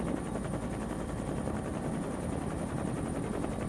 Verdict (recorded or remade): recorded